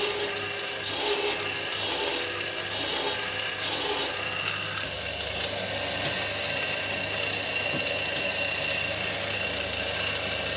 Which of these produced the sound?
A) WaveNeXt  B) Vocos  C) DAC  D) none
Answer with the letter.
D